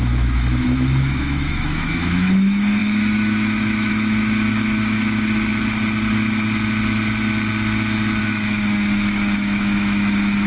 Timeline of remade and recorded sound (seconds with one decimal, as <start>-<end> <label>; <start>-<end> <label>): 0.0-5.5 remade; 5.5-8.2 recorded; 8.2-10.5 remade